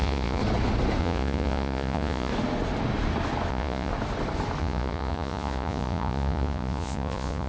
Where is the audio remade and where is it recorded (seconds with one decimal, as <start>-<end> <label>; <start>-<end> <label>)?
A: 0.0-0.4 remade; 0.4-1.0 recorded; 1.0-2.3 remade; 2.3-3.5 recorded; 3.5-3.9 remade; 3.9-4.6 recorded; 4.6-7.5 remade